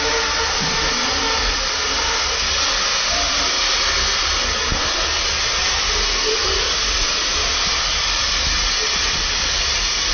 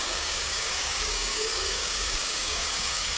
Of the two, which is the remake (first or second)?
second